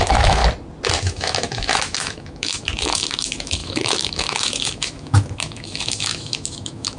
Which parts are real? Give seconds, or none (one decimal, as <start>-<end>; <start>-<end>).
0.4-1.0

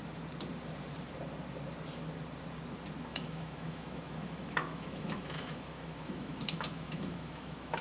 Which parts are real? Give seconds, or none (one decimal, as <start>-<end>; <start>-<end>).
0.0-3.1

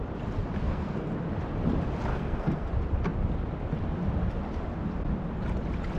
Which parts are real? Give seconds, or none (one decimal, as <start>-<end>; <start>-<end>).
0.0-0.6; 1.1-2.1; 2.7-6.0

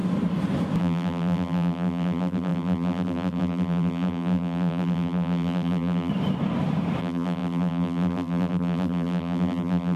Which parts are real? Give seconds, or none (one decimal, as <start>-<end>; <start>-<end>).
0.0-0.8; 6.1-7.0

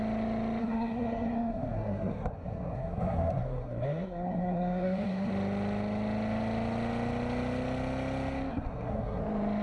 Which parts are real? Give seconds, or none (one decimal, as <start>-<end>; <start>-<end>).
0.0-0.6; 5.3-8.5; 9.2-9.6

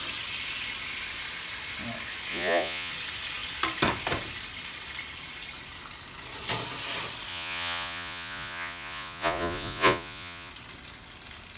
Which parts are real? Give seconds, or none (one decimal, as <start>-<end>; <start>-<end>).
0.0-2.3; 2.9-7.3; 10.5-11.6